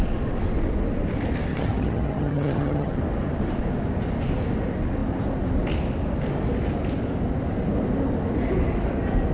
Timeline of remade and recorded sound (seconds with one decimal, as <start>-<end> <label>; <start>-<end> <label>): 0.0-1.5 recorded; 1.5-3.0 remade; 3.0-9.3 recorded